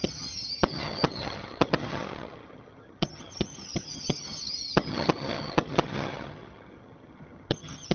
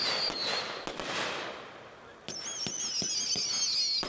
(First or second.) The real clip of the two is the second